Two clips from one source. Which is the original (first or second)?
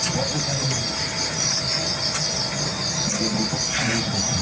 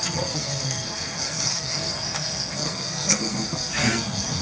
first